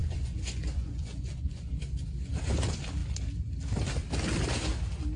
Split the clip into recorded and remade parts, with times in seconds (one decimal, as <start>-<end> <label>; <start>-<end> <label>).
0.0-1.9 remade; 1.9-5.2 recorded